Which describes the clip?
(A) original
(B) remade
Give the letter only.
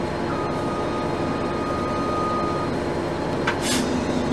A